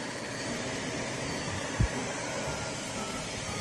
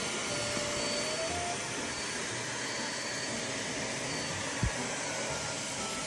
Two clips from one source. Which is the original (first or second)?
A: second